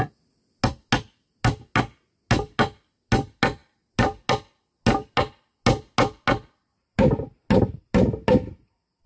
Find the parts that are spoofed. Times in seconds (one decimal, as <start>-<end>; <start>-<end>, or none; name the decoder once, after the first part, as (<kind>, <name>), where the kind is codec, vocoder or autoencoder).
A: none